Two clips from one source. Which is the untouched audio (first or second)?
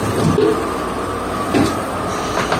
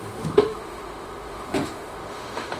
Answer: first